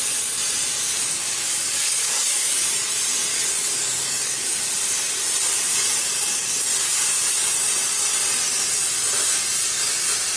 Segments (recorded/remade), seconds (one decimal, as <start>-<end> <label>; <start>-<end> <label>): 0.0-0.9 recorded; 0.9-2.7 remade; 2.7-3.3 recorded; 3.3-4.6 remade; 4.6-10.4 recorded